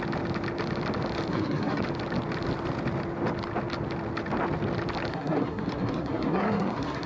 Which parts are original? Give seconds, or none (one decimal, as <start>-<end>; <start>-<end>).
0.0-1.3; 1.8-5.1